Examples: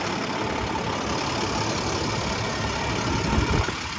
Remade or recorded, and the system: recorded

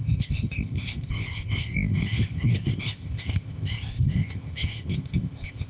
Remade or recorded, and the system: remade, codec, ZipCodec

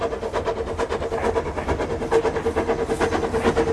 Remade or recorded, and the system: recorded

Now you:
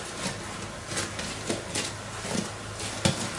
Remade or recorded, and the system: recorded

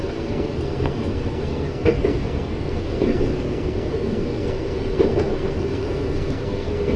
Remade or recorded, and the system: remade, codec, SNAC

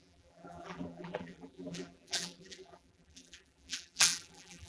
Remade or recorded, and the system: remade, vocoder, BigVGAN v2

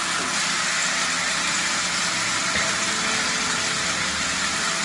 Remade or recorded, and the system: recorded